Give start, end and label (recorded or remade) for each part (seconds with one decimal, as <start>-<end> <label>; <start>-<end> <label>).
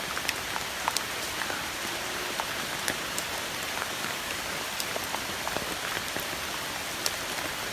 0.0-3.8 recorded; 3.8-4.5 remade; 4.5-7.7 recorded